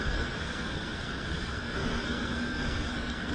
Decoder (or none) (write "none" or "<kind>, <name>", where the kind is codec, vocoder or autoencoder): codec, SNAC